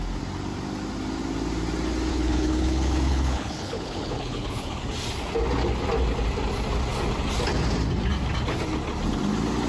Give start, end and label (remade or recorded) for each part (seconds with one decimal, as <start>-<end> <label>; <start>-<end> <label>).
0.0-2.1 recorded; 2.1-4.8 remade; 4.8-9.7 recorded